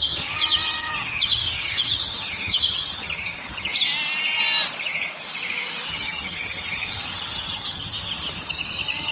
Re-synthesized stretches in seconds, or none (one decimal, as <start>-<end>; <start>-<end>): 0.0-3.7; 5.9-9.1